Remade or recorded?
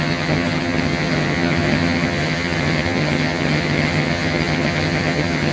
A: remade